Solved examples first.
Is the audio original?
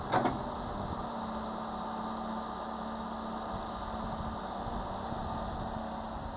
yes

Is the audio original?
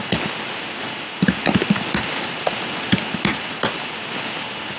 yes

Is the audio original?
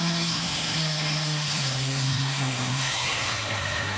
no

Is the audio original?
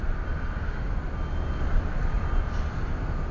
yes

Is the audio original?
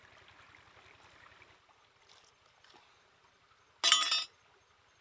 yes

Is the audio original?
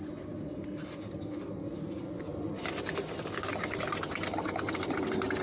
yes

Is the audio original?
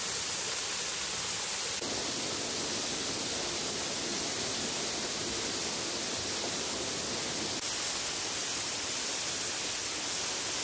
yes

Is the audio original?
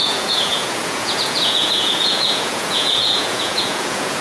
no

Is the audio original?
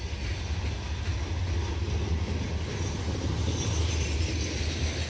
yes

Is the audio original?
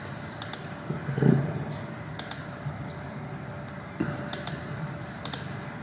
yes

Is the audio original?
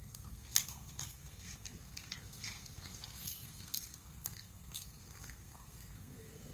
no